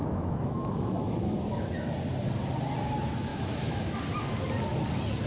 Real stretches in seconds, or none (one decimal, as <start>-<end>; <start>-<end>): 1.6-3.3; 4.0-5.3